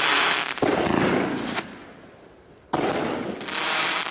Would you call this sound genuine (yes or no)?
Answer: yes